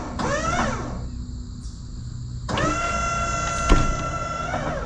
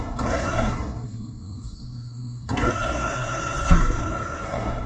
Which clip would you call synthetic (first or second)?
second